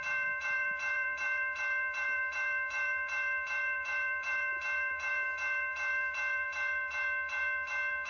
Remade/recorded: remade